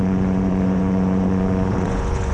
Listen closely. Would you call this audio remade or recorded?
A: remade